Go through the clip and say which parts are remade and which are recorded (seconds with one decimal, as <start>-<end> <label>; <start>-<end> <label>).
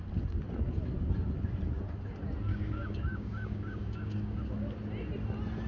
0.0-2.5 recorded; 2.5-4.4 remade; 4.4-5.7 recorded